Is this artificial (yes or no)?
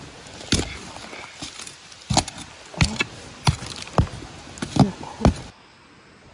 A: no